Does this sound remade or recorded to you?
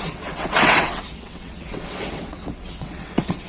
remade